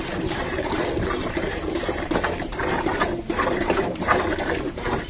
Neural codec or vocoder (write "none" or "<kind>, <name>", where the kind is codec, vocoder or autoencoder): vocoder, BigVGAN v2